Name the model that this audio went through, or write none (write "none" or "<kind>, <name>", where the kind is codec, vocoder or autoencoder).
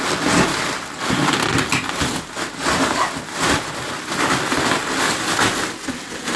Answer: none